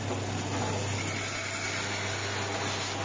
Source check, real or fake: real